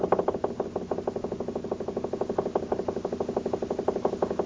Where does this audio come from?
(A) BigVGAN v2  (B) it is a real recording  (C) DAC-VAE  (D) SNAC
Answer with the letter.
B